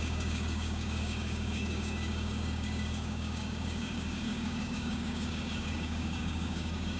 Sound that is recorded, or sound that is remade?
remade